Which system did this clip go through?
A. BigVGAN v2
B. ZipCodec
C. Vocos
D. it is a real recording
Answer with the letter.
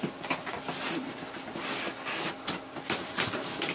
D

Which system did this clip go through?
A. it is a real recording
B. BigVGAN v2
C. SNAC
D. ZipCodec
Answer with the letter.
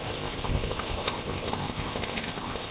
D